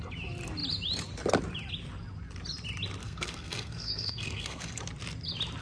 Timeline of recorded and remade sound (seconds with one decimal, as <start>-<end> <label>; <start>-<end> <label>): 0.0-3.0 recorded; 3.0-4.8 remade; 4.8-5.6 recorded

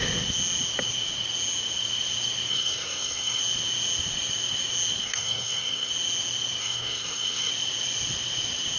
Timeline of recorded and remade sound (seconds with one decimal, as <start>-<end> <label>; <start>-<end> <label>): 0.0-2.5 recorded; 2.5-3.4 remade; 3.4-5.0 recorded; 5.0-5.9 remade; 5.9-6.6 recorded; 6.6-7.5 remade; 7.5-8.8 recorded

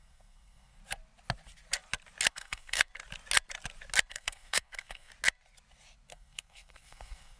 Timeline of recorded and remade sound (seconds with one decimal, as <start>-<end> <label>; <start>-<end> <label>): 0.0-0.8 remade; 0.8-2.3 recorded; 2.3-2.9 remade; 2.9-4.1 recorded; 4.1-5.1 remade; 5.1-6.1 recorded; 6.1-7.4 remade

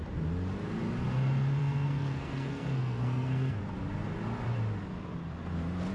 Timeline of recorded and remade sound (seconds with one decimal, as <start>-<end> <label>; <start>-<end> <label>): 0.0-1.6 recorded; 1.6-3.6 remade; 3.6-5.9 recorded

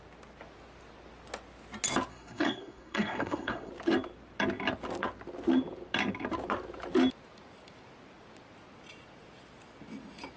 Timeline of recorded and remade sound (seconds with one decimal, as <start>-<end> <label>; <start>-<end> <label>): 0.0-2.1 recorded; 2.1-3.7 remade; 3.7-10.4 recorded

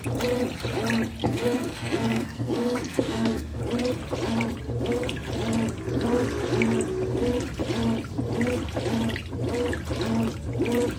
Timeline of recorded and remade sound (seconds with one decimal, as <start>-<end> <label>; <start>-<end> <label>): 0.0-1.2 recorded; 1.2-3.6 remade; 3.6-11.0 recorded

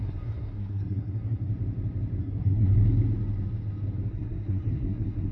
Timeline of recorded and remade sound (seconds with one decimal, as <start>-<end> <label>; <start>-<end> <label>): 0.0-1.5 remade; 1.5-2.2 recorded; 2.2-2.7 remade; 2.7-4.1 recorded; 4.1-5.3 remade

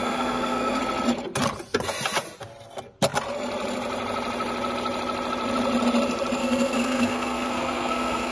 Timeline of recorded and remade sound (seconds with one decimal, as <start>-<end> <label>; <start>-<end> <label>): 0.0-0.8 remade; 0.8-6.4 recorded; 6.4-8.3 remade